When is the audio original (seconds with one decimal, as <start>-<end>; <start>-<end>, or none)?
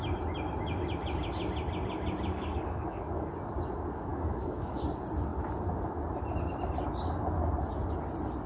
0.0-2.3; 3.3-4.1; 4.8-8.5